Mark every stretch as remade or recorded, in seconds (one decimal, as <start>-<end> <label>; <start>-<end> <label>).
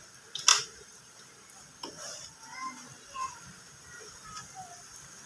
0.0-0.5 recorded; 0.5-1.2 remade; 1.2-5.3 recorded